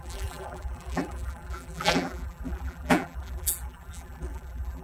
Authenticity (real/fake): fake